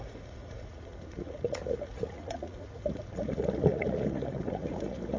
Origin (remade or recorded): remade